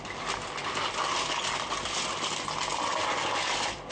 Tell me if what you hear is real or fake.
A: real